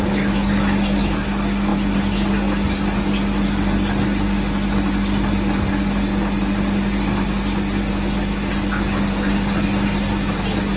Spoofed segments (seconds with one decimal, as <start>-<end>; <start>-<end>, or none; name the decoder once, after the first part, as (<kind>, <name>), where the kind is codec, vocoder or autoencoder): none